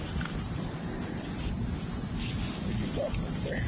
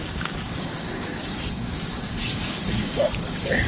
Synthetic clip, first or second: second